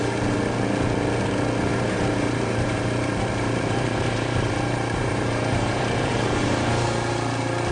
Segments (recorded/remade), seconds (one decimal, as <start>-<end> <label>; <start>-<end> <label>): 0.0-1.7 recorded; 1.7-6.1 remade; 6.1-7.7 recorded

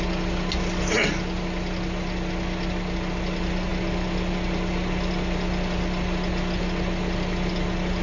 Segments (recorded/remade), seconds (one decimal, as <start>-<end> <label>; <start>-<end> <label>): 0.0-8.0 recorded

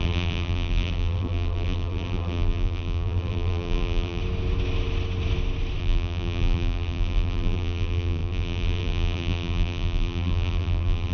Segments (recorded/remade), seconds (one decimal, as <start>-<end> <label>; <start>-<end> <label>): 0.0-4.2 remade; 4.2-5.8 recorded; 5.8-11.1 remade

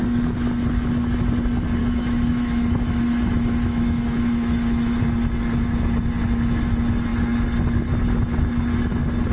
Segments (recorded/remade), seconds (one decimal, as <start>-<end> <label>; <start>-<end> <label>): 0.0-1.8 recorded; 1.8-5.0 remade; 5.0-9.3 recorded

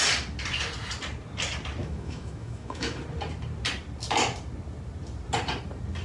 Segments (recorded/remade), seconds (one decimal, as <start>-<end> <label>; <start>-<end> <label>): 0.0-1.8 recorded; 1.8-3.0 remade; 3.0-6.0 recorded

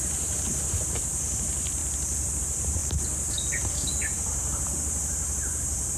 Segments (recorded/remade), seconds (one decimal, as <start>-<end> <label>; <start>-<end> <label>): 0.0-1.8 remade; 1.8-2.4 recorded; 2.4-2.8 remade; 2.8-3.7 recorded; 3.7-6.0 remade